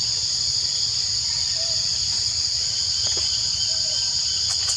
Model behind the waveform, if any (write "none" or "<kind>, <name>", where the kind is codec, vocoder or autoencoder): vocoder, BigVGAN v2